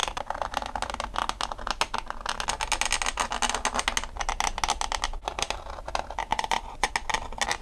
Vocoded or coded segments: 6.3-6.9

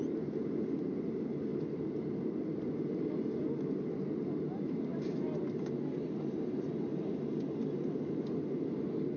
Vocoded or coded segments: none